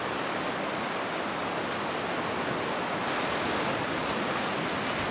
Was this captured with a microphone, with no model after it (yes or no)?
yes